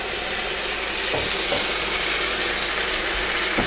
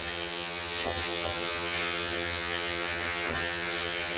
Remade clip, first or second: second